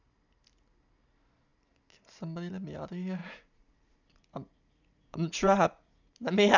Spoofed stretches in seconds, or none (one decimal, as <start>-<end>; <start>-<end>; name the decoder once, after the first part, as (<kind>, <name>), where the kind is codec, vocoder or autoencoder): 3.2-6.1 (vocoder, Vocos)